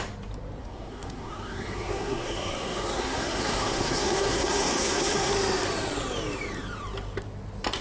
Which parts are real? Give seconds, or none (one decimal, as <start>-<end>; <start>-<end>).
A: 0.0-0.6; 5.3-7.8